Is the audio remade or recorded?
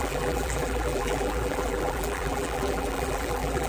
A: remade